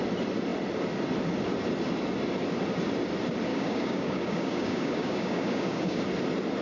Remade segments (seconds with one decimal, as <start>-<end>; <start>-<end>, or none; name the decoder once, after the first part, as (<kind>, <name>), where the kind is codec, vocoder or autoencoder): 3.5-6.0 (codec, DAC)